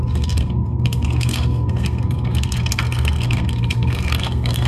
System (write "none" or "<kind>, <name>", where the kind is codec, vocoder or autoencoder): codec, SNAC